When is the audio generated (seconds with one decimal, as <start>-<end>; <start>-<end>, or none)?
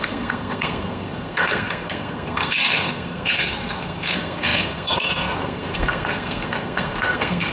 0.0-7.5